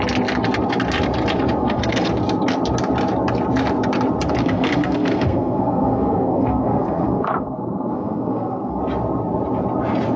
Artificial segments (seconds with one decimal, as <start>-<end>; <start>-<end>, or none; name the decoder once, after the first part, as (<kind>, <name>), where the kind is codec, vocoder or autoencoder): 1.6-2.1 (codec, SNAC); 4.4-8.8